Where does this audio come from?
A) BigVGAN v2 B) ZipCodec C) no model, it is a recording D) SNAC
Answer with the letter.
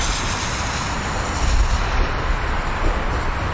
C